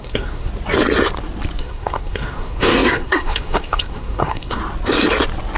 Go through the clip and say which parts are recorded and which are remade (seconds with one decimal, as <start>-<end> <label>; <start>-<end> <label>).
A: 0.0-0.5 remade; 0.5-1.6 recorded; 1.6-4.6 remade; 4.6-5.6 recorded